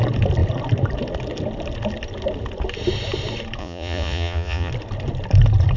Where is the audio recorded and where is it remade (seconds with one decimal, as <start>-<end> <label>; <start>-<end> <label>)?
0.0-3.6 recorded; 3.6-4.7 remade; 4.7-5.8 recorded